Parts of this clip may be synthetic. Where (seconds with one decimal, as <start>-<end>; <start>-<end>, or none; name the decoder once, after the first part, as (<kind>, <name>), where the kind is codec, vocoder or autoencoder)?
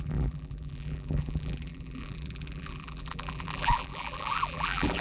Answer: 0.0-5.0 (vocoder, BigVGAN v2)